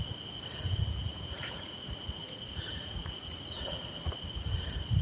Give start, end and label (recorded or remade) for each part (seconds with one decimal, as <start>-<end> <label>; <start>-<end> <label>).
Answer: 0.0-1.1 recorded; 1.1-4.1 remade; 4.1-5.0 recorded